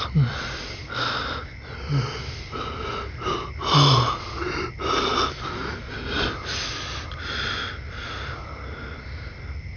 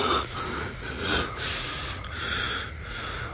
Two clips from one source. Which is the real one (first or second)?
first